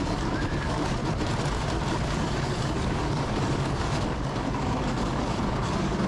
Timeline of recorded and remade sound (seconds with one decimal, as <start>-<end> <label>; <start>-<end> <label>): 0.0-1.0 remade; 1.0-1.9 recorded; 1.9-6.1 remade

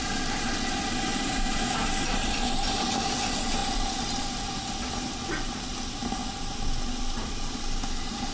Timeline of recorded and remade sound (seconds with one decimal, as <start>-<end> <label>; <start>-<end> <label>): 0.0-8.3 recorded

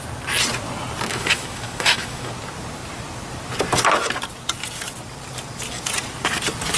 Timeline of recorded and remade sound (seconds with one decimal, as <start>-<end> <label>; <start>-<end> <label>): 0.0-1.1 recorded; 1.1-2.3 remade; 2.3-6.8 recorded